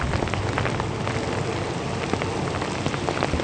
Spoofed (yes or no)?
no